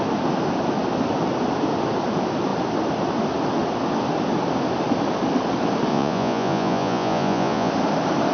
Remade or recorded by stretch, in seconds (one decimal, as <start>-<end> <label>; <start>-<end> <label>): 0.0-5.9 recorded; 5.9-7.7 remade; 7.7-8.3 recorded

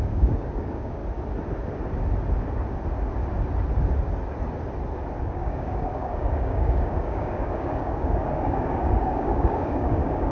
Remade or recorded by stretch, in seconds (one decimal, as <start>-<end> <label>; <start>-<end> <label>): 0.0-1.0 remade; 1.0-5.2 recorded; 5.2-10.3 remade

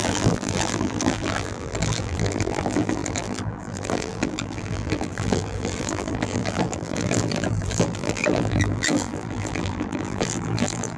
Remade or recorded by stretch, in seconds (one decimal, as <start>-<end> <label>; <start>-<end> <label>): 0.0-11.0 remade

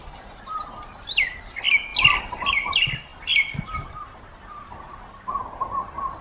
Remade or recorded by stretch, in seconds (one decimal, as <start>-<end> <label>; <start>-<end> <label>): 0.0-1.9 recorded; 1.9-2.7 remade; 2.7-3.1 recorded; 3.1-5.0 remade; 5.0-6.2 recorded

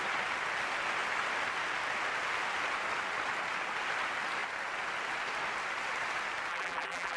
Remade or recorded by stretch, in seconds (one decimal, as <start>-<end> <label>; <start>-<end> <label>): 0.0-6.5 recorded; 6.5-7.2 remade

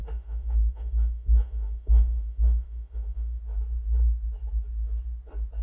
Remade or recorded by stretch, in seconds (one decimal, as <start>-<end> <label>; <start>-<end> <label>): 0.0-3.4 remade; 3.4-5.6 recorded

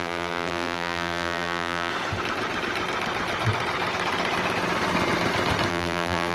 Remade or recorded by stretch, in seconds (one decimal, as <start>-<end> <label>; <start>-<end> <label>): 0.0-1.9 remade; 1.9-5.7 recorded; 5.7-6.3 remade

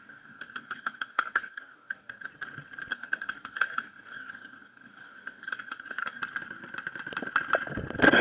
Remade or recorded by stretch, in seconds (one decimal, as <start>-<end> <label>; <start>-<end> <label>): 0.0-2.3 remade; 2.3-2.9 recorded; 2.9-6.2 remade; 6.2-8.2 recorded